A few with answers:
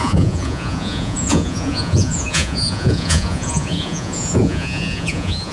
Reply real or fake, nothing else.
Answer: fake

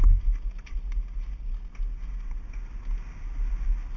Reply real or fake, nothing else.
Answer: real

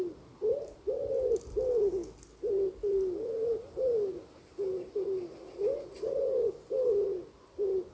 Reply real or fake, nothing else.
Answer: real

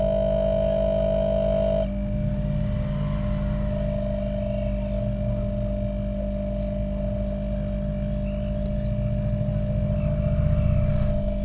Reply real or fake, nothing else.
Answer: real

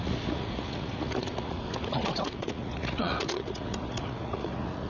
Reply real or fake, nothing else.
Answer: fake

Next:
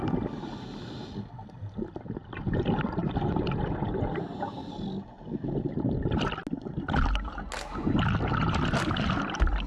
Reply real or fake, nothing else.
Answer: real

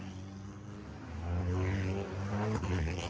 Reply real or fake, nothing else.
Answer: real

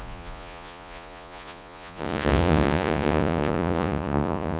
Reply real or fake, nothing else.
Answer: fake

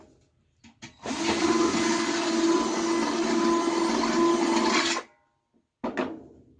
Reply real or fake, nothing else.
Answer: real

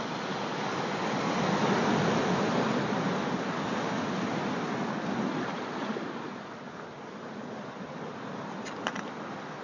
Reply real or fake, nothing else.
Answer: real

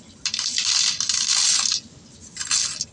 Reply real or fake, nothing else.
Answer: real